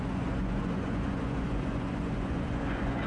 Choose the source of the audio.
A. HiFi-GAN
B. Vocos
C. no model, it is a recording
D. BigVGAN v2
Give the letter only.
B